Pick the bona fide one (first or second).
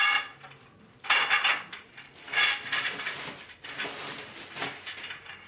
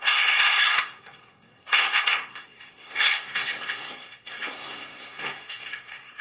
first